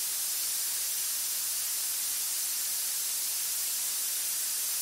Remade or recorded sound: recorded